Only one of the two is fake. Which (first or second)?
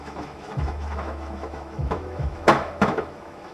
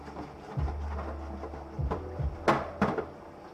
first